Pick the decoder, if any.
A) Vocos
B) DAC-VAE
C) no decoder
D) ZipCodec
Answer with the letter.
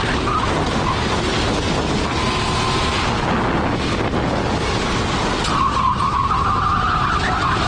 C